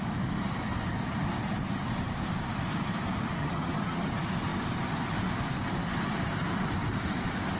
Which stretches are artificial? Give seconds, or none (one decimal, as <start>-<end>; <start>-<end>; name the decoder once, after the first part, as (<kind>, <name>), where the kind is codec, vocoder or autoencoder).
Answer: 3.4-4.1 (vocoder, HiFi-GAN)